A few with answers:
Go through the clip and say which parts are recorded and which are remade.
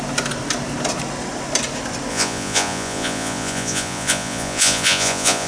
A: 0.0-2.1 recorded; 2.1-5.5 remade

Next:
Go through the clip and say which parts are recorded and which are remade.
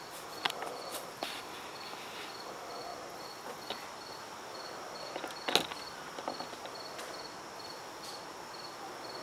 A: 0.0-9.2 recorded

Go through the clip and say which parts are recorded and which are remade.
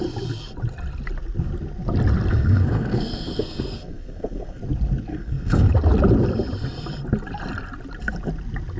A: 0.0-2.3 recorded; 2.3-4.6 remade; 4.6-5.1 recorded; 5.1-5.7 remade; 5.7-8.8 recorded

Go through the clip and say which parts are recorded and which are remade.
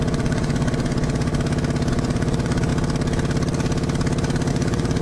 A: 0.0-1.3 remade; 1.3-1.9 recorded; 1.9-2.7 remade; 2.7-4.5 recorded; 4.5-5.0 remade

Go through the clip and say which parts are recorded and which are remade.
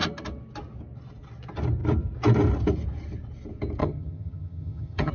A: 0.0-3.8 recorded; 3.8-5.1 remade